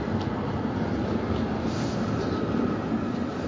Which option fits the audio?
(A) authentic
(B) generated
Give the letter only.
A